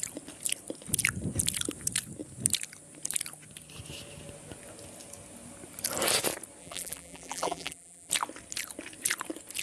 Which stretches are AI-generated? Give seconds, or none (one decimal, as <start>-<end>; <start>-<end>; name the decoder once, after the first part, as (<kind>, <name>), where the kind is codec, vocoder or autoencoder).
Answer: 6.6-8.1 (vocoder, BigVGAN v2)